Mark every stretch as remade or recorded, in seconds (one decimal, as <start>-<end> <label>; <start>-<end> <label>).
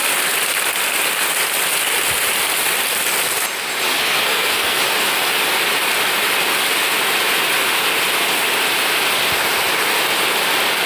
0.0-3.9 recorded; 3.9-4.8 remade; 4.8-10.9 recorded